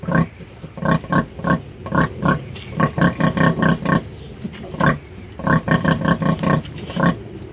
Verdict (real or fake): real